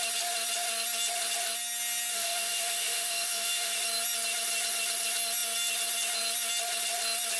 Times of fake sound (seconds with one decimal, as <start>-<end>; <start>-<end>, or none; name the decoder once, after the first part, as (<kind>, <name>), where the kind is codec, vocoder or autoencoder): 2.1-3.7 (autoencoder, DAC-VAE)